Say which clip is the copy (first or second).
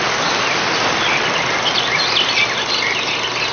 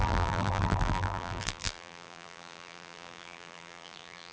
second